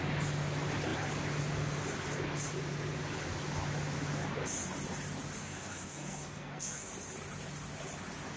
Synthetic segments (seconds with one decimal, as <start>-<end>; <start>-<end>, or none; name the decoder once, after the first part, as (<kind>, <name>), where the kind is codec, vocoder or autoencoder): 5.4-6.9 (codec, SNAC)